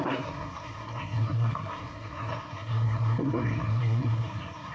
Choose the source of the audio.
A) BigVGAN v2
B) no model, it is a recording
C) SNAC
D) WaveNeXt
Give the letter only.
C